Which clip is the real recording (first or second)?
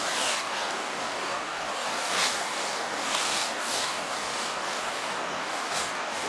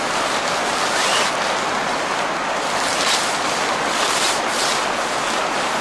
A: second